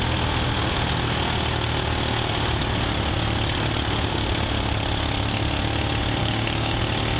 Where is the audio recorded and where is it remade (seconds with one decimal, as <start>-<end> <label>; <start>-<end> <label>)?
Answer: 0.0-6.2 recorded; 6.2-6.8 remade; 6.8-7.2 recorded